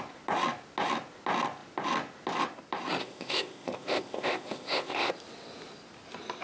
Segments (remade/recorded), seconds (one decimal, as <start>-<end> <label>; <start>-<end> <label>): 0.0-3.0 recorded; 3.0-5.1 remade; 5.1-6.4 recorded